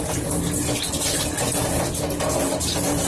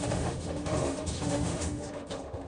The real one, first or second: first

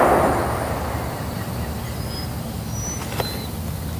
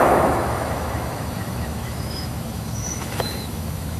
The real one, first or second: first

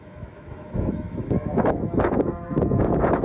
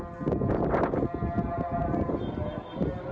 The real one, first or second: second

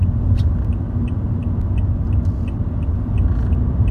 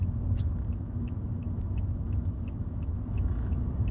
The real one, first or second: first